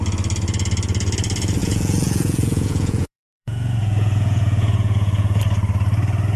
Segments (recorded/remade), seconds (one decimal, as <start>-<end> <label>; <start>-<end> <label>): 0.0-1.6 recorded; 1.6-5.4 remade; 5.4-6.4 recorded